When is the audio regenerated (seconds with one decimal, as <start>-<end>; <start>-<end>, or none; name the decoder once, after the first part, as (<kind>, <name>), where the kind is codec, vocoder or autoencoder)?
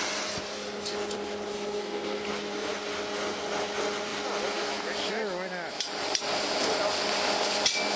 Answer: 1.5-2.2 (codec, SNAC)